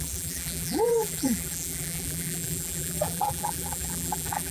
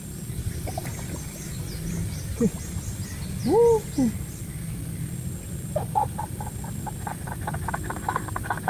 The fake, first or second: first